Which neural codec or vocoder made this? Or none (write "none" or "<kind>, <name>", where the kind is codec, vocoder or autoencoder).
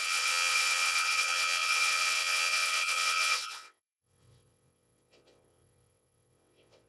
vocoder, WaveNeXt